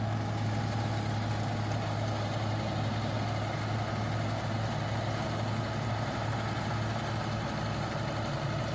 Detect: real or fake real